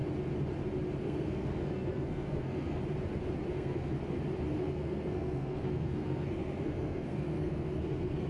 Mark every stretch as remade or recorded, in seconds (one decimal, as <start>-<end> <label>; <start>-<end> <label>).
0.0-1.0 recorded; 1.0-2.8 remade; 2.8-3.5 recorded; 3.5-4.0 remade; 4.0-4.6 recorded; 4.6-8.3 remade